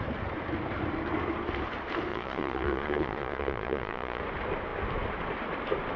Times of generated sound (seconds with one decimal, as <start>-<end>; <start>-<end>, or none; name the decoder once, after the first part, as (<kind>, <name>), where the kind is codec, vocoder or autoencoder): 2.1-4.2 (vocoder, Vocos)